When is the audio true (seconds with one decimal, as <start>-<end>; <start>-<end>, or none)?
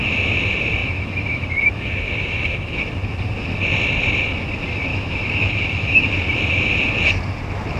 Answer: 0.0-0.8; 2.8-4.9; 6.1-7.8